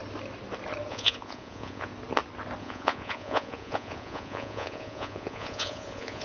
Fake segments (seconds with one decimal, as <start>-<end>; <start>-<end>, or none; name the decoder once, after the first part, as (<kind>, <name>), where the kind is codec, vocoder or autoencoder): 0.9-1.9 (vocoder, Vocos); 2.6-6.2